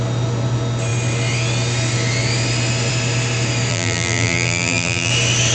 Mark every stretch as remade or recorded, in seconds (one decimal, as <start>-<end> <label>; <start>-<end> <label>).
0.0-3.7 recorded; 3.7-5.1 remade; 5.1-5.5 recorded

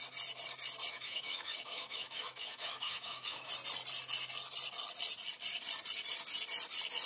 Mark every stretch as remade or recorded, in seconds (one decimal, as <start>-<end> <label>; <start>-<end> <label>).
0.0-0.9 recorded; 0.9-3.5 remade; 3.5-7.1 recorded